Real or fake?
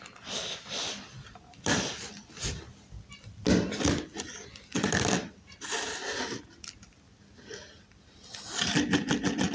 real